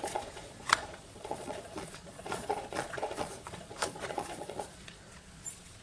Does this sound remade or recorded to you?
remade